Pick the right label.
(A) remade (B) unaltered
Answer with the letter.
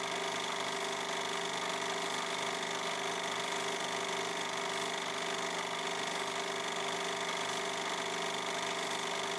B